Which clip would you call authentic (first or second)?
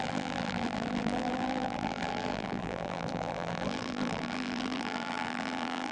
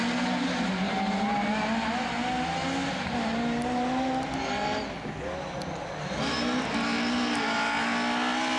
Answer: second